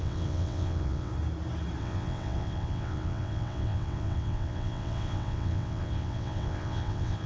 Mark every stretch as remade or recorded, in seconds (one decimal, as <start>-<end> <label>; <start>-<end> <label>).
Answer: 0.0-1.1 remade; 1.1-1.8 recorded; 1.8-7.3 remade